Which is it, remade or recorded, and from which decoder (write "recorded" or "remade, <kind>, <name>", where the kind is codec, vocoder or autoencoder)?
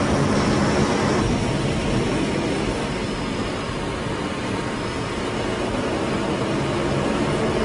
recorded